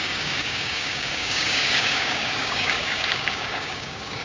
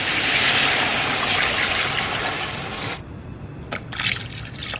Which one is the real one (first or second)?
second